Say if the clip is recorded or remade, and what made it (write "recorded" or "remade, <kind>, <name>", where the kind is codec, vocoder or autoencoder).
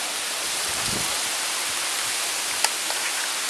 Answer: recorded